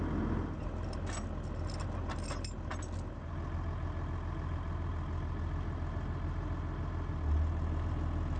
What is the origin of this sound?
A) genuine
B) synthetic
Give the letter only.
A